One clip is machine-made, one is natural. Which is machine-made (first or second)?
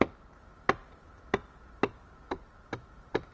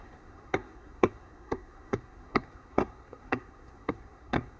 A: second